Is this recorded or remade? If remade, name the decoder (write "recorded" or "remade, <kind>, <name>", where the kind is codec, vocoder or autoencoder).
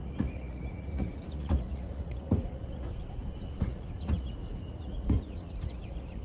remade, vocoder, Vocos